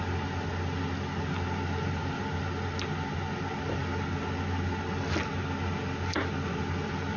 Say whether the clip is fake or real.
real